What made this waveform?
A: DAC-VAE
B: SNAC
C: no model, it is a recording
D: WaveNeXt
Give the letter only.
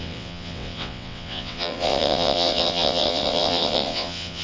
D